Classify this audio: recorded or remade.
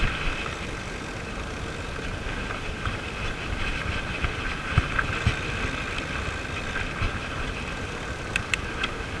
recorded